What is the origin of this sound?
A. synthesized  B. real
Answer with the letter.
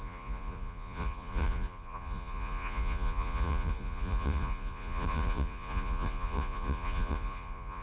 A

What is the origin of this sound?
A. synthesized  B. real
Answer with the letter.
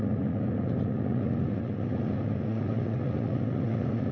A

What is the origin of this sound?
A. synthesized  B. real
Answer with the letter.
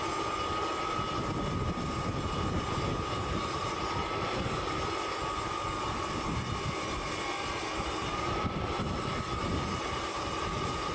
B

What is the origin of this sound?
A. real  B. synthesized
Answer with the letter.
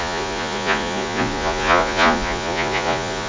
B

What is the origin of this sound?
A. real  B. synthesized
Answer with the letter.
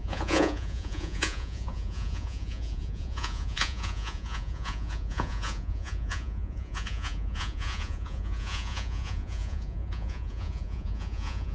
B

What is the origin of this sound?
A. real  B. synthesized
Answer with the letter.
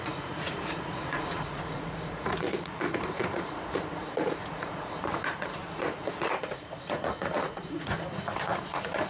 B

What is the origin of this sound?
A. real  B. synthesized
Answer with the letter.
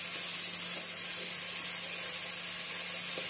A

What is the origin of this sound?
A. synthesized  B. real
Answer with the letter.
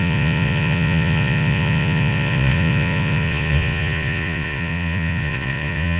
A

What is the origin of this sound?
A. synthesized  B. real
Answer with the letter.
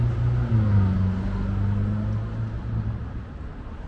B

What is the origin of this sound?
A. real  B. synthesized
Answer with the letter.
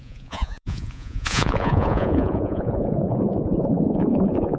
B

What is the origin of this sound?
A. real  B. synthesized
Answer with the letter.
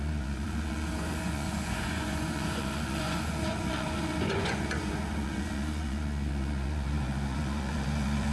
B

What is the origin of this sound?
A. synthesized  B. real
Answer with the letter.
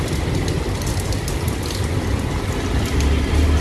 B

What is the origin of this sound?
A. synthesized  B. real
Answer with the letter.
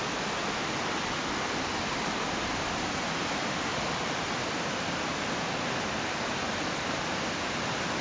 B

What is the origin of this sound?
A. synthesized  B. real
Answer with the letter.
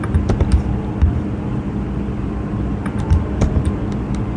B